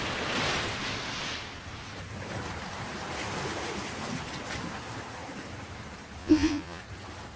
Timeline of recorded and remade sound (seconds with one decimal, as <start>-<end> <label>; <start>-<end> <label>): 0.0-6.2 recorded; 6.2-6.8 remade; 6.8-7.4 recorded